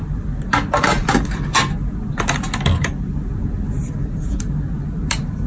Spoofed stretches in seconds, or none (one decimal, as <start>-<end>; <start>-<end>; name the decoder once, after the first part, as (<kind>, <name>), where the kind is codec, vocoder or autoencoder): none